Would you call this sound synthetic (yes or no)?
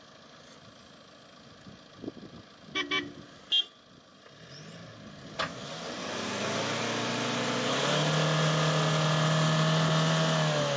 no